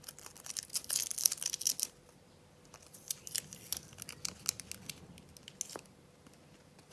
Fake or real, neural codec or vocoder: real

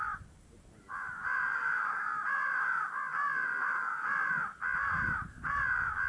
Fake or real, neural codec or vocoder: fake, vocoder, BigVGAN v2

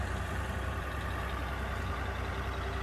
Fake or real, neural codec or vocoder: real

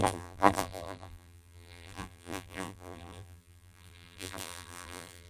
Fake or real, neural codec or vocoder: fake, vocoder, BigVGAN v2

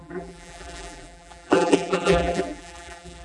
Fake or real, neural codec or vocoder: fake, vocoder, BigVGAN v2